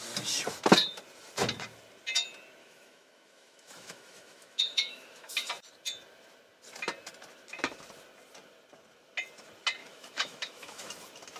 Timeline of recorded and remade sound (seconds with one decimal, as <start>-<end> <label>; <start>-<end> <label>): 0.0-2.6 recorded; 2.6-5.5 remade; 5.5-9.8 recorded; 9.8-10.9 remade; 10.9-11.4 recorded